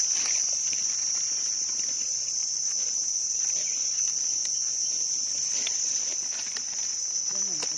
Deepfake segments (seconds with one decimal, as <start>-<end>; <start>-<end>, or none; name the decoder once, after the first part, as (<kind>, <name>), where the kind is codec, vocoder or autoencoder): none